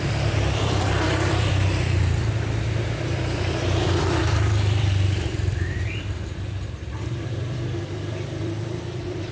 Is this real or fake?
fake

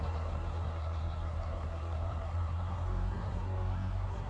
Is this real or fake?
fake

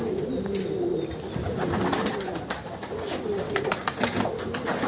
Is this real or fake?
real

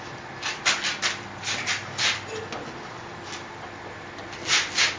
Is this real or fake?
real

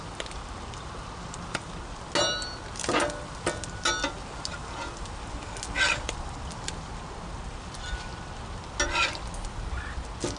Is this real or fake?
real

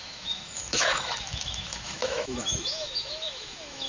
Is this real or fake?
fake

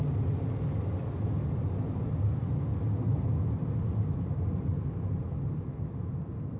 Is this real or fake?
real